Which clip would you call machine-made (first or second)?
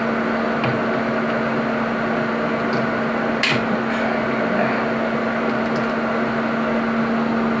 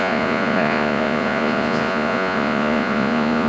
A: second